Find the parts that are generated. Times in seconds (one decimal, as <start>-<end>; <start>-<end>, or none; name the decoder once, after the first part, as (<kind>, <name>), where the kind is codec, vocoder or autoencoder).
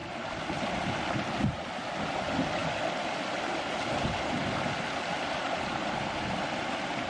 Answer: none